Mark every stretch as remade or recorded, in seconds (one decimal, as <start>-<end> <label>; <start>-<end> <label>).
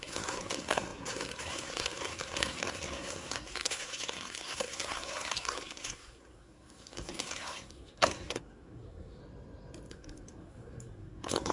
0.0-9.2 remade; 9.2-9.9 recorded; 9.9-11.5 remade